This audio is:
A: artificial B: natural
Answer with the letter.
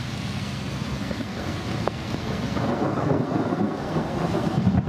A